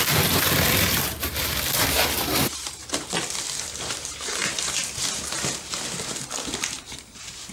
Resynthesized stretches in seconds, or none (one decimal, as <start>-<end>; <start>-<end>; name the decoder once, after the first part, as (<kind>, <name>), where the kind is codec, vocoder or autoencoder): none